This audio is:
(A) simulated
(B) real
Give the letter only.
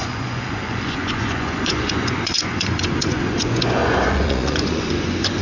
A